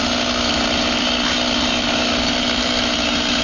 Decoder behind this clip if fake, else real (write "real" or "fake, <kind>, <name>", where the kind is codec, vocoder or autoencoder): real